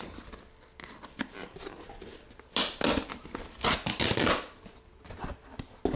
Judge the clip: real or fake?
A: real